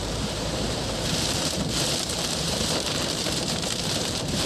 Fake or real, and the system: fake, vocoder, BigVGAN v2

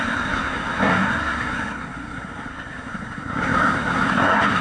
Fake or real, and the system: fake, codec, SNAC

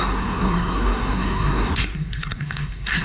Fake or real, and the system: fake, codec, SNAC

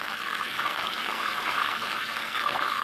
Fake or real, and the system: fake, codec, SNAC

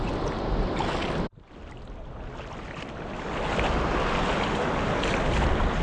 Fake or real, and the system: real